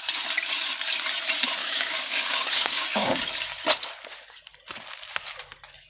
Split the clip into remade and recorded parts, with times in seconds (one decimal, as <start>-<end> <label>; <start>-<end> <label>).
0.0-1.6 recorded; 1.6-3.2 remade; 3.2-5.9 recorded